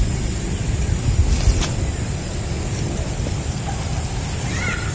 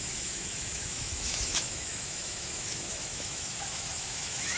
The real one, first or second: first